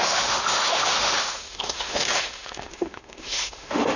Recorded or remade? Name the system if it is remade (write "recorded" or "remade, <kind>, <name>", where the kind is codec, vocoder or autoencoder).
remade, autoencoder, DAC-VAE